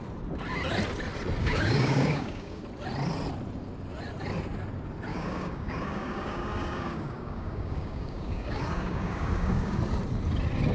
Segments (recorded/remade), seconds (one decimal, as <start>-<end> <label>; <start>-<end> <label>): 0.0-1.4 recorded; 1.4-2.6 remade; 2.6-5.1 recorded; 5.1-9.8 remade; 9.8-10.7 recorded